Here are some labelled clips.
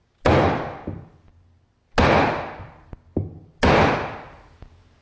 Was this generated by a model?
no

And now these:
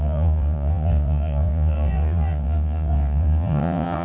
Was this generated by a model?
yes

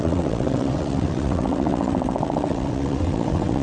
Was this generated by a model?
yes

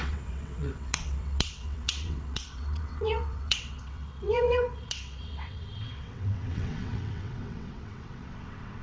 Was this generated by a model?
yes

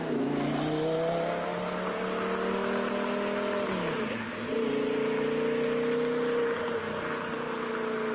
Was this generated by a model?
no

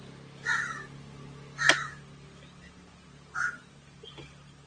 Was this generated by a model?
no